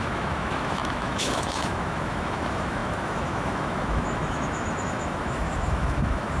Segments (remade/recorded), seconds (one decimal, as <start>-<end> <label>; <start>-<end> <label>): 0.0-6.4 remade